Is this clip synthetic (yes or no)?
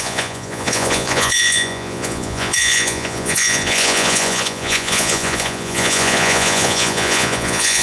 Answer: yes